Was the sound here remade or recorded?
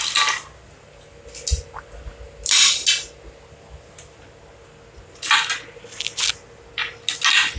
recorded